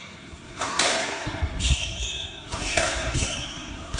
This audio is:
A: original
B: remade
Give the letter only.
B